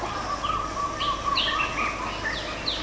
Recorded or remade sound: recorded